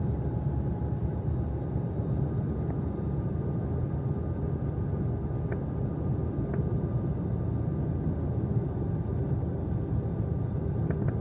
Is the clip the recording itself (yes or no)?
yes